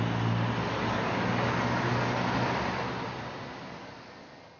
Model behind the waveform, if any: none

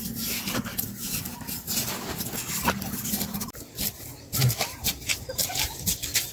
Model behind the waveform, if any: none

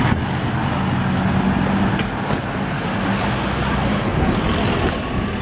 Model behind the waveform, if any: none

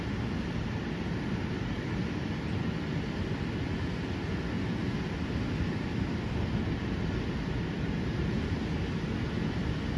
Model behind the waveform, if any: none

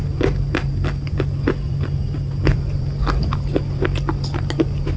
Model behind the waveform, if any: none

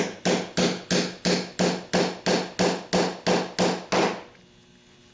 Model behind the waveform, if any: none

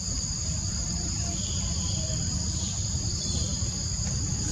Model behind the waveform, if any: vocoder, BigVGAN v2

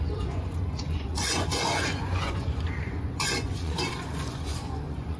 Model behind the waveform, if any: vocoder, Vocos